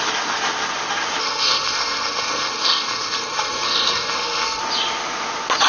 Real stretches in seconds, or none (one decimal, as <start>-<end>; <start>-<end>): 0.0-1.2; 4.6-5.7